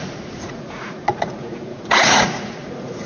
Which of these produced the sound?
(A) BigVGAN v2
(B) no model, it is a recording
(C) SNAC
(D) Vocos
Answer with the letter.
D